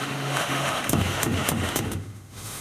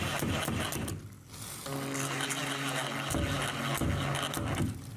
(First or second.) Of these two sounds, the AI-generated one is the first